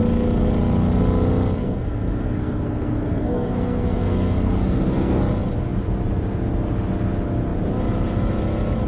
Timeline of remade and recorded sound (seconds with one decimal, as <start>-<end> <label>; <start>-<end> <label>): 0.0-1.6 recorded; 1.6-5.2 remade; 5.2-8.9 recorded